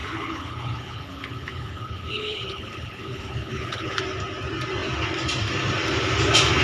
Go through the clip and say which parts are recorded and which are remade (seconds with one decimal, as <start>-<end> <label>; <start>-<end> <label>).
0.0-4.0 remade; 4.0-6.6 recorded